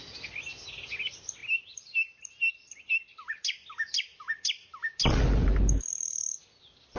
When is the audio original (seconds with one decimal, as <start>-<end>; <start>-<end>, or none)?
0.0-7.0